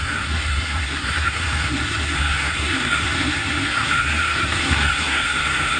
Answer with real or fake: fake